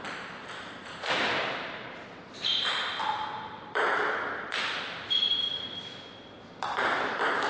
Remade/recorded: recorded